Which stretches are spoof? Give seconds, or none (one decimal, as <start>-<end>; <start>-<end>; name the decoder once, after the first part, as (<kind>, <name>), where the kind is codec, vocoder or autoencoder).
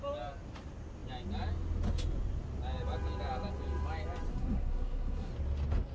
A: 4.3-5.3 (codec, SNAC)